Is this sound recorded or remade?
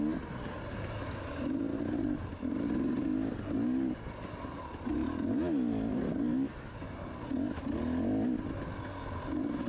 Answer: recorded